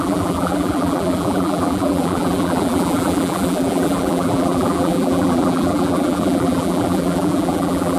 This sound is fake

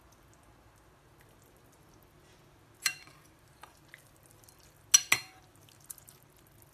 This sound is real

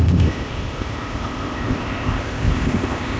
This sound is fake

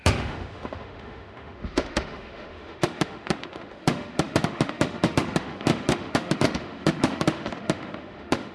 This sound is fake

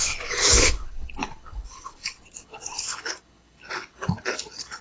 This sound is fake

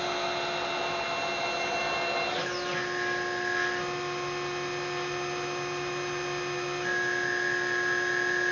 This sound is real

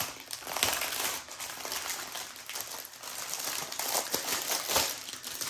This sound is fake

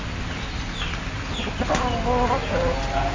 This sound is real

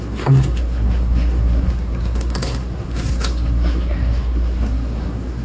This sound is fake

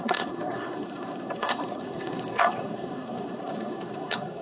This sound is fake